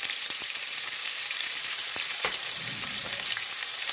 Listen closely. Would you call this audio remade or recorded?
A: remade